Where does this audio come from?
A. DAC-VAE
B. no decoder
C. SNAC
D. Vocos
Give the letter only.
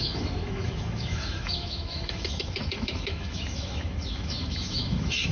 A